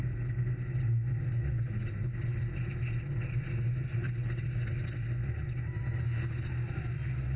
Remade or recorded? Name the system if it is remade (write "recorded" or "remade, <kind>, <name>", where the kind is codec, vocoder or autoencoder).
recorded